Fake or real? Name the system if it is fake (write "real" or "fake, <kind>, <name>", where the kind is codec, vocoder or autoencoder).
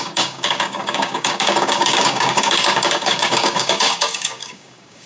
fake, codec, DAC